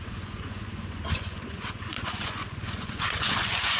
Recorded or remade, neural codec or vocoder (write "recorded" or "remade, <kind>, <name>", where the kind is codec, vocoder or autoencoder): remade, vocoder, Vocos